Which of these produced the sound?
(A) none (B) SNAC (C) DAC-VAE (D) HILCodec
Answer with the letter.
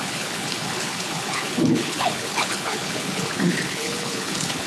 D